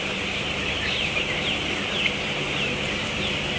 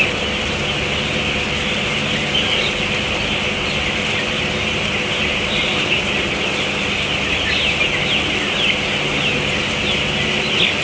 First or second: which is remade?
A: first